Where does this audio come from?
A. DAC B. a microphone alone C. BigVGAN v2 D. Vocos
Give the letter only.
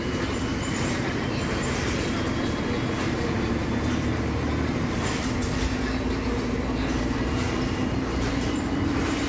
C